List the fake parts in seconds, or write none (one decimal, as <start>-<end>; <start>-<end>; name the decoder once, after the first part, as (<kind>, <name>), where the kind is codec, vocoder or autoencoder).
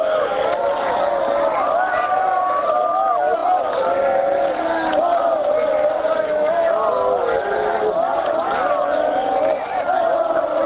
none